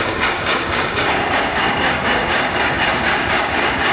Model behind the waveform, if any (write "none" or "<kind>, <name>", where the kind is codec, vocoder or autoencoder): codec, DAC